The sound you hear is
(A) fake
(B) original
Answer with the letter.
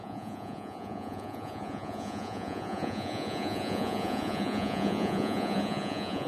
A